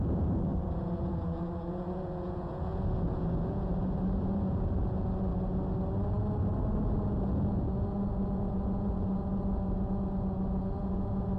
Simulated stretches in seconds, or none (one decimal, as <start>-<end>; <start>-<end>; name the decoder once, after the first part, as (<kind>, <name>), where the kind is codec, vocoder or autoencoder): 0.0-5.3 (vocoder, Vocos); 6.4-11.4